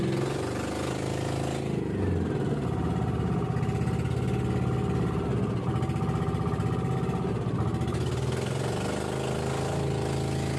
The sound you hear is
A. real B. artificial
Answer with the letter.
A